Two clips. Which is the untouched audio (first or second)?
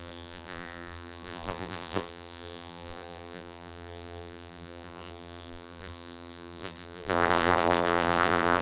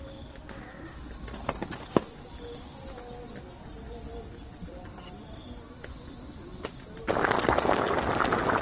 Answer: second